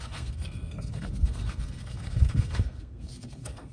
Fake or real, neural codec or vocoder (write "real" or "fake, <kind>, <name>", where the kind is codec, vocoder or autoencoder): fake, codec, SNAC